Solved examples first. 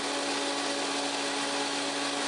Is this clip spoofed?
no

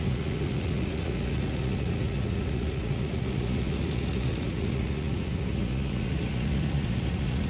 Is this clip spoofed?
yes